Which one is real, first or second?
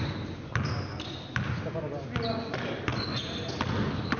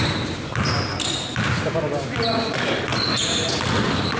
first